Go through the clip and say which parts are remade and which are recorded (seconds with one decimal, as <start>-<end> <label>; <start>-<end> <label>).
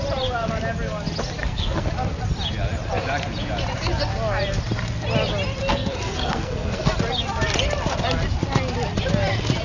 0.0-1.4 recorded; 1.4-1.9 remade; 1.9-5.7 recorded; 5.7-6.9 remade; 6.9-9.6 recorded